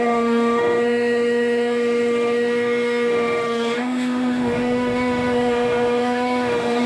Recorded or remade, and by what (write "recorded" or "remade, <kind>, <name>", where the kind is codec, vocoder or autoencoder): remade, autoencoder, DAC-VAE